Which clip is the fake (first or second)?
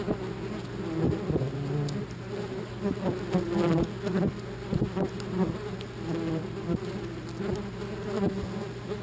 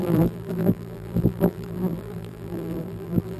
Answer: second